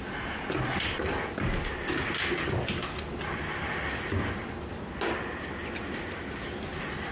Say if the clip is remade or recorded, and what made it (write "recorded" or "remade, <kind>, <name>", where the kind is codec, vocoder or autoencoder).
recorded